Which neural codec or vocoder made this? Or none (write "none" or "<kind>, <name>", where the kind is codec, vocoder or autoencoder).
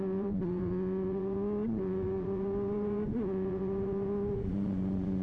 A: vocoder, Vocos